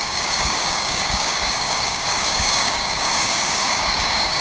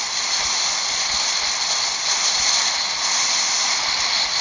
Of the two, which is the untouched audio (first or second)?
second